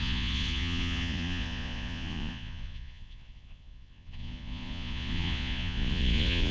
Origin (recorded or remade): remade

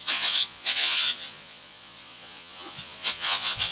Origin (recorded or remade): remade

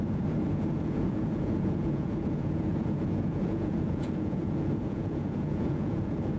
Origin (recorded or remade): remade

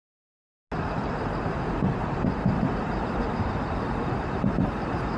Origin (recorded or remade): recorded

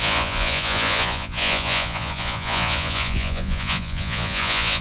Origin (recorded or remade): remade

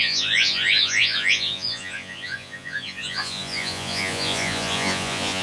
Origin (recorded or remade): remade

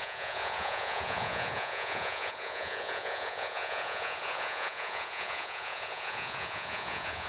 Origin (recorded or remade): remade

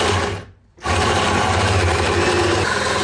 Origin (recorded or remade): recorded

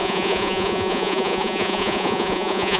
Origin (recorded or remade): remade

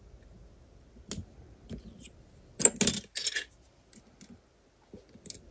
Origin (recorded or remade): recorded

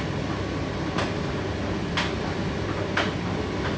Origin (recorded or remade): recorded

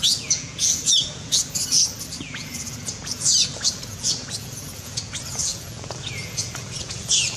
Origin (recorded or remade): remade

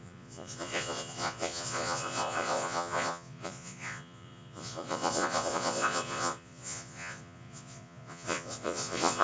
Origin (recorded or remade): remade